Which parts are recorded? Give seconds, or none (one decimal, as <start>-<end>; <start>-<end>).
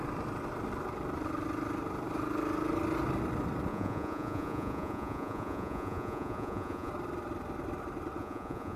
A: 0.0-3.7; 6.9-8.2